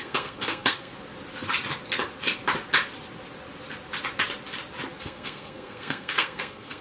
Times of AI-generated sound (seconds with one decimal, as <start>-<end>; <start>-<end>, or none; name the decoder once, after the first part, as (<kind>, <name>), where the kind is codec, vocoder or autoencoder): 0.0-0.9 (codec, SNAC); 5.0-6.8